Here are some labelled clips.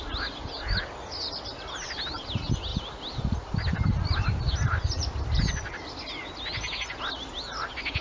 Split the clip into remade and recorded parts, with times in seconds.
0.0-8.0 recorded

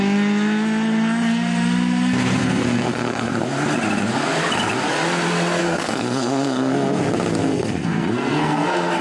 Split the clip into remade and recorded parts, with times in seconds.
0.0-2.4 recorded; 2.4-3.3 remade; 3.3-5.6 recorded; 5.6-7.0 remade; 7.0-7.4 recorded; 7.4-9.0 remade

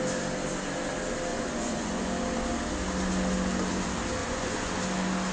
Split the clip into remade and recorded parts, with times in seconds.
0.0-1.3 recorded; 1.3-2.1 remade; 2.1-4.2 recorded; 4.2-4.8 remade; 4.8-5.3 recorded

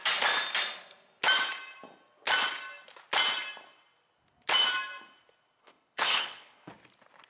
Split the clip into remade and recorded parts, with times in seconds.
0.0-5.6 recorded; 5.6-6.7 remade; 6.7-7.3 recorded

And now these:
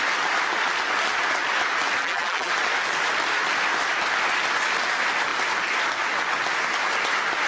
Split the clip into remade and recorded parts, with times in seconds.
0.0-2.0 recorded; 2.0-2.5 remade; 2.5-7.5 recorded